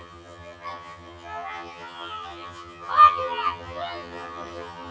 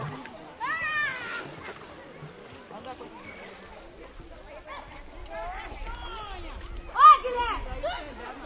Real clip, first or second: second